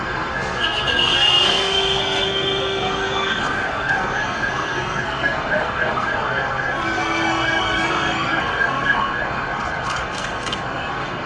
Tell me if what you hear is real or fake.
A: fake